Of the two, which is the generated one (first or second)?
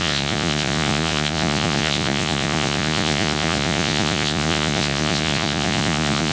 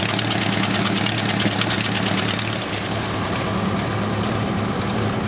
first